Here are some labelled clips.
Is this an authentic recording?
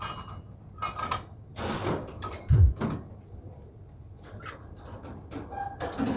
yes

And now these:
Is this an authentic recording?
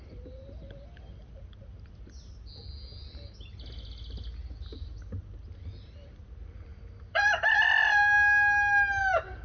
yes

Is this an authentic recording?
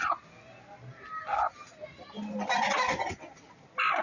yes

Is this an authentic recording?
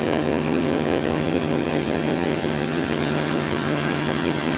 no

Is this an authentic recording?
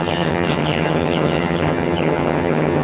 no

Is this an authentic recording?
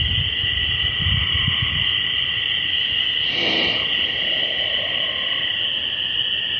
yes